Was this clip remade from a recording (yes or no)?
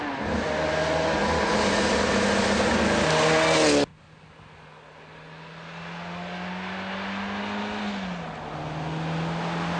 no